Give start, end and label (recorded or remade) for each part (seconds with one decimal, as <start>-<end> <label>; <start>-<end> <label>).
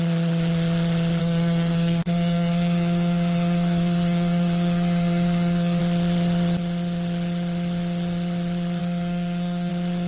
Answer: 0.0-1.2 recorded; 1.2-5.8 remade; 5.8-8.8 recorded; 8.8-9.7 remade; 9.7-10.1 recorded